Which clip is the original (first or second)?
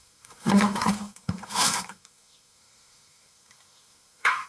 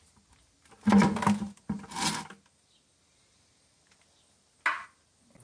second